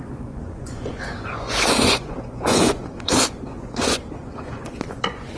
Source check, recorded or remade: remade